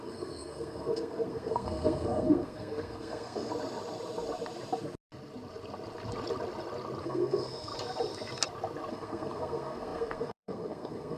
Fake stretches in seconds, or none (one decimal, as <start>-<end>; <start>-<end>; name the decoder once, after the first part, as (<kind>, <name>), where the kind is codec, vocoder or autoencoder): 0.0-3.5 (codec, SNAC); 7.0-7.7; 8.9-11.2